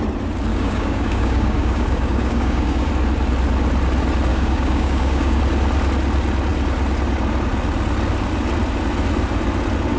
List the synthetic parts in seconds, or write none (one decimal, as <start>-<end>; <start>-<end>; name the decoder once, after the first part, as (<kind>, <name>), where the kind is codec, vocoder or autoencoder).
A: 0.5-2.9 (codec, DAC); 4.3-5.4